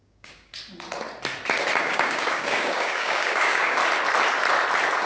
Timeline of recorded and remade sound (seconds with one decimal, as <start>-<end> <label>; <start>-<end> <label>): 0.0-0.5 remade; 0.5-1.8 recorded; 1.8-3.8 remade; 3.8-5.1 recorded